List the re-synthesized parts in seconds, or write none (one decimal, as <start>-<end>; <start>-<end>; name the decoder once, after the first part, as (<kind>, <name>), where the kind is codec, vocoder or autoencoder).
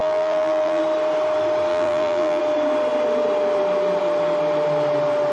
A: 0.0-0.8 (vocoder, BigVGAN v2); 1.7-2.4